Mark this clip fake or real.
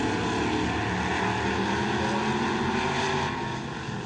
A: real